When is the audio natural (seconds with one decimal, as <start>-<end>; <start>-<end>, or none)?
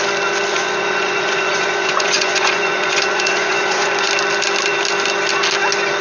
0.0-0.5; 4.1-6.0